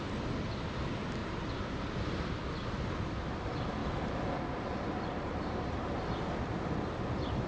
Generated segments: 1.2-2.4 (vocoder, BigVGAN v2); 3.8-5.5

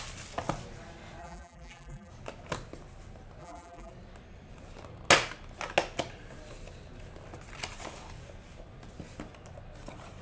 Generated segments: 1.2-2.1 (vocoder, BigVGAN v2); 3.4-3.9

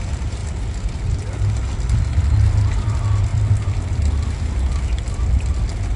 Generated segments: 0.0-0.4 (vocoder, BigVGAN v2); 2.6-6.0

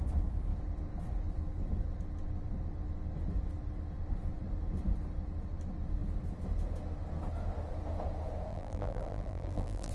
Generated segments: 8.5-9.9 (vocoder, BigVGAN v2)

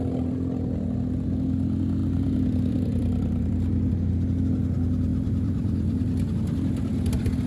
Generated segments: 2.0-3.9 (vocoder, BigVGAN v2); 5.1-7.5

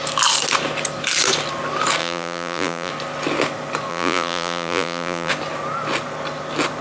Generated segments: 2.0-2.9 (vocoder, BigVGAN v2); 3.9-5.3

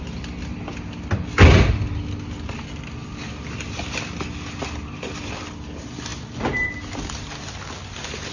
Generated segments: none

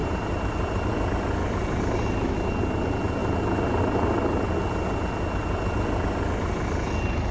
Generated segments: 0.0-0.9 (vocoder, BigVGAN v2); 1.4-2.5